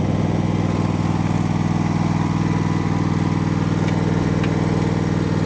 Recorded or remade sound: recorded